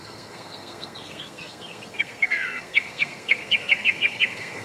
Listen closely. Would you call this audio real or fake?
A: fake